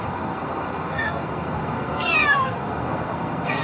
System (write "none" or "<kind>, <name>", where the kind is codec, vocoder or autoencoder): codec, SNAC